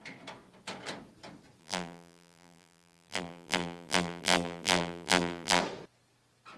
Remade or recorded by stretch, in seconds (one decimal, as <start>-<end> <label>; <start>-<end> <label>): 0.0-1.6 recorded; 1.6-5.6 remade; 5.6-6.6 recorded

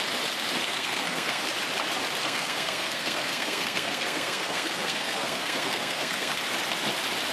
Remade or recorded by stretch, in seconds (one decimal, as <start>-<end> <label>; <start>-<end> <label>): 0.0-0.7 recorded; 0.7-1.4 remade; 1.4-2.2 recorded; 2.2-6.3 remade; 6.3-7.3 recorded

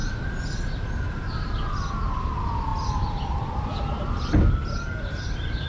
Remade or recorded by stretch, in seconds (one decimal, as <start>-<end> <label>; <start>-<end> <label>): 0.0-5.7 remade